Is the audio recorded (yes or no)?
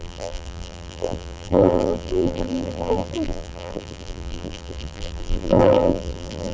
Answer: no